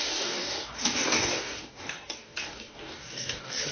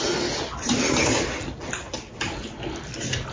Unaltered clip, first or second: second